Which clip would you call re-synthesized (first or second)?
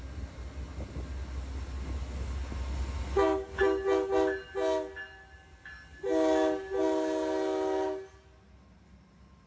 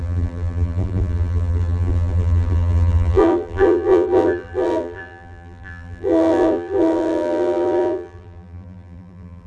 second